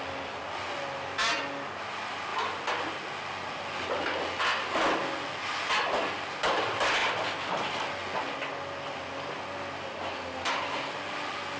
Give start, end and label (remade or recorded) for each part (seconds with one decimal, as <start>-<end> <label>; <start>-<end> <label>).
0.0-11.6 recorded